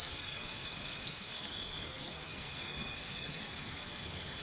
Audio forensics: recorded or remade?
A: remade